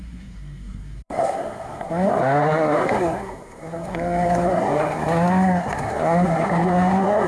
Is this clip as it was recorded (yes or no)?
no